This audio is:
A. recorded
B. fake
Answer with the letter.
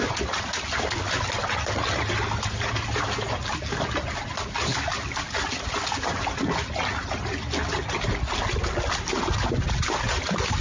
A